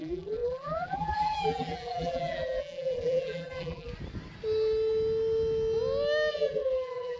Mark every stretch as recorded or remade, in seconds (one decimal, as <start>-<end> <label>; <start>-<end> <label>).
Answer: 0.0-3.9 remade; 3.9-6.3 recorded; 6.3-7.2 remade